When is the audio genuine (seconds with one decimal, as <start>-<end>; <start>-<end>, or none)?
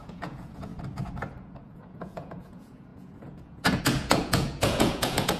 0.7-1.4